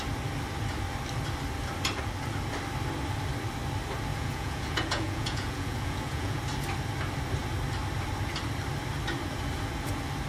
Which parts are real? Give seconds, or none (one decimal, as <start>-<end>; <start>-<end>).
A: 0.0-4.1; 6.4-10.3